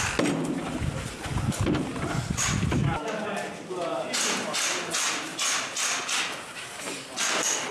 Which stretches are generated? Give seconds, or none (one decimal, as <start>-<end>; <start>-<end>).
none